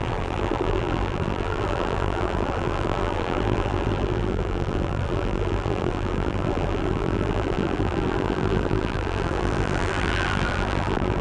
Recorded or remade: remade